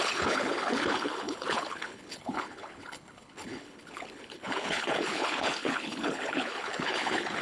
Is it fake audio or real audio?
fake